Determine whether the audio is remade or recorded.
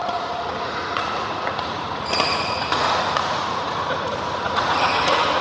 remade